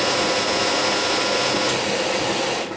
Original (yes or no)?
yes